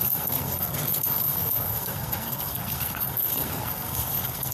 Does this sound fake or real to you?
fake